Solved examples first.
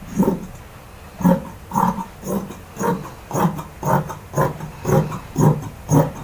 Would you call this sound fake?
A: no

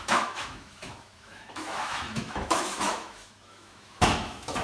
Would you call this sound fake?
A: yes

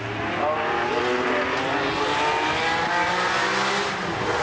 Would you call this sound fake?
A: no